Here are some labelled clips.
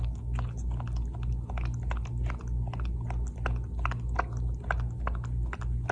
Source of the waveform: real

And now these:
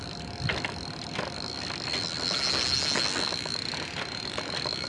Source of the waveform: real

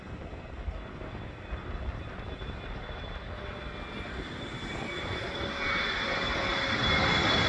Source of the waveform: real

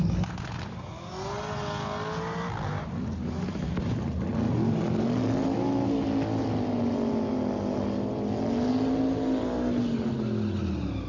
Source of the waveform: real